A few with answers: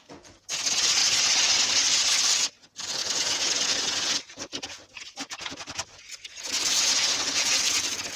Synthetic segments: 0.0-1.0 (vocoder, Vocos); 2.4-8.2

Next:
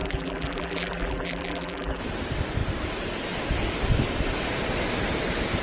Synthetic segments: 0.0-2.0 (vocoder, BigVGAN v2)

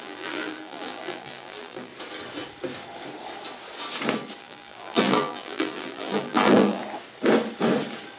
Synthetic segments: 0.0-1.9 (vocoder, BigVGAN v2); 4.4-6.8